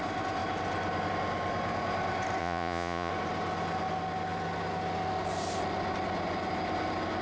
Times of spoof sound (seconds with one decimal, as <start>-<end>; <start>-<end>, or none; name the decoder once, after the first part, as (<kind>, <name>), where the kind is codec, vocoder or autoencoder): 2.4-3.1 (vocoder, Vocos)